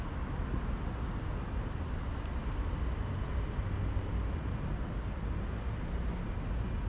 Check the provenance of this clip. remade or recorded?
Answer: recorded